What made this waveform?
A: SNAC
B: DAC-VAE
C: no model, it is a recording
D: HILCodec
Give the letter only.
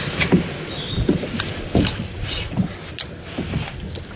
C